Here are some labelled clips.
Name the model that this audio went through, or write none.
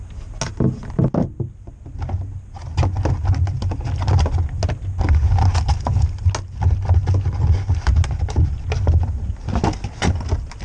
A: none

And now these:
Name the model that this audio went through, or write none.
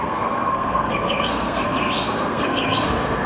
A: codec, SNAC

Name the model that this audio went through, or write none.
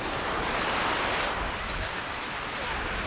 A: none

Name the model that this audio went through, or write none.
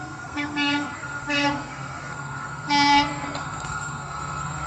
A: codec, SNAC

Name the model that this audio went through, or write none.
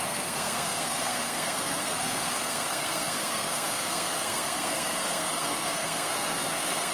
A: codec, SNAC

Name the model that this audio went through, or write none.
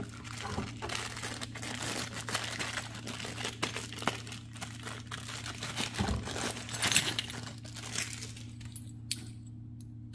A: none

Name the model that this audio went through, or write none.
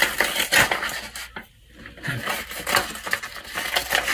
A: none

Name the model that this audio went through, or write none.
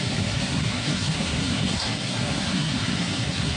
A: codec, SNAC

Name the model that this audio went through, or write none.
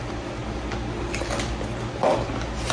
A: none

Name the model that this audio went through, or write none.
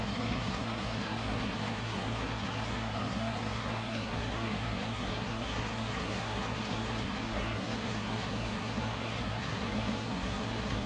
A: codec, SNAC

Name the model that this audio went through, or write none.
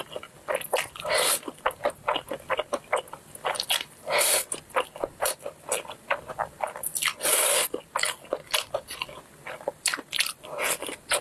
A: none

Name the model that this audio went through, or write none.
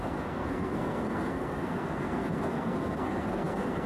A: codec, SNAC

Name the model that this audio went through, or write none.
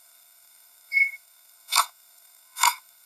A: codec, SNAC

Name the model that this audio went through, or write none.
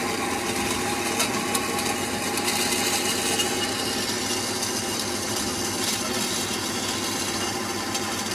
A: none